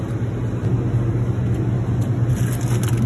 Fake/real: real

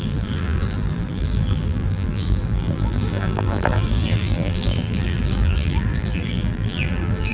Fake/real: fake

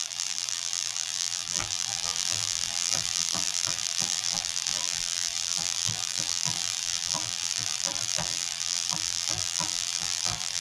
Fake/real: fake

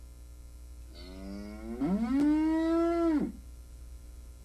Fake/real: real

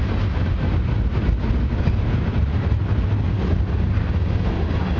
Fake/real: real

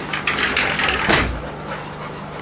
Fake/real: real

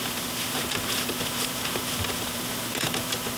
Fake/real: real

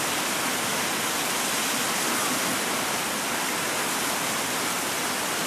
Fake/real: real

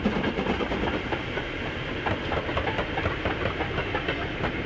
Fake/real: real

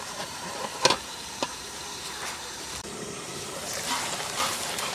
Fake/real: fake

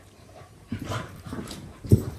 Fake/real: fake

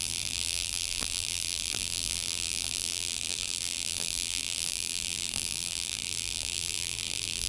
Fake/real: fake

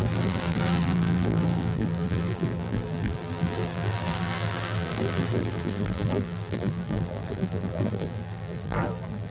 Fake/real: fake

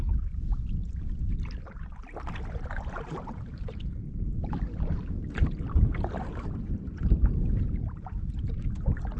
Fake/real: fake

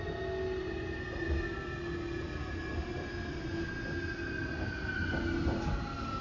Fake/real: real